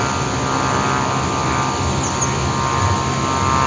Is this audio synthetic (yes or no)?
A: no